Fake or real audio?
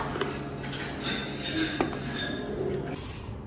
real